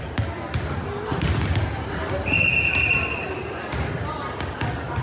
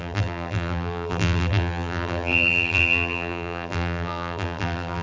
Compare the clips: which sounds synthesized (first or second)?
second